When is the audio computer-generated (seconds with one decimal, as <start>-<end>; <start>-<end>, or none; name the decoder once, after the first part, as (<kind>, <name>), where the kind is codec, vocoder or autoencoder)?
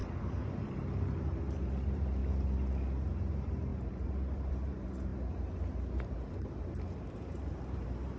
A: 0.0-2.2 (vocoder, BigVGAN v2); 3.0-5.1; 5.9-8.2